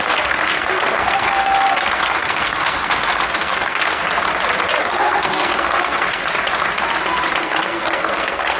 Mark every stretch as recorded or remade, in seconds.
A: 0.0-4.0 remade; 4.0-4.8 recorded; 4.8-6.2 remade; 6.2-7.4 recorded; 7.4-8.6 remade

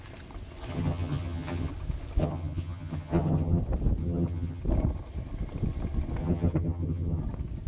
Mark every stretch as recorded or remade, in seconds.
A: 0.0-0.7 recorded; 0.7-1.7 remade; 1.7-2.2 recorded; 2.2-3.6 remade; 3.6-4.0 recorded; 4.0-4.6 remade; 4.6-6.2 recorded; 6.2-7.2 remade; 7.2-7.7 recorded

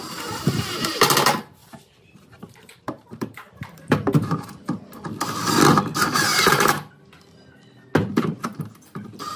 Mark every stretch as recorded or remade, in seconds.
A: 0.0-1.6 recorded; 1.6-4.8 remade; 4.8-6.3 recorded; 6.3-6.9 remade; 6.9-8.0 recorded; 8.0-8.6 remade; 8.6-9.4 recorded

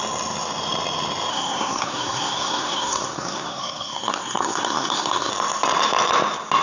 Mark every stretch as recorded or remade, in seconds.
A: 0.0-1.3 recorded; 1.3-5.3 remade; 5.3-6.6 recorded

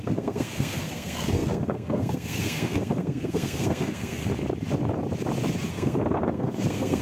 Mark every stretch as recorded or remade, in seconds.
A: 0.0-4.3 remade; 4.3-5.7 recorded; 5.7-7.0 remade